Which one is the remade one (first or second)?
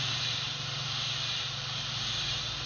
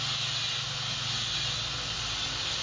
first